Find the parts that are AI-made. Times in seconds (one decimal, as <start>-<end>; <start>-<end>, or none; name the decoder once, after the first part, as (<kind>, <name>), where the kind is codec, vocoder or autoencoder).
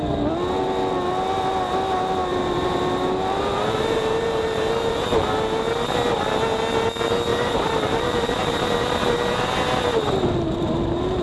2.3-5.3 (vocoder, BigVGAN v2); 7.3-8.6